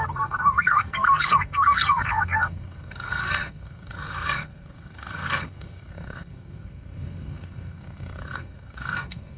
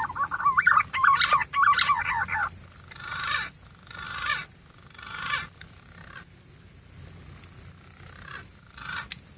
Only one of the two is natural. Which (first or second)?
second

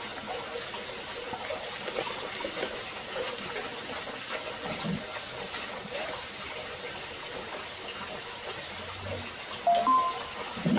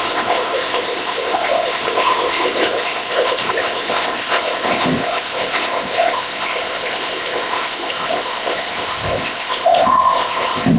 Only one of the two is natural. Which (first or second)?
first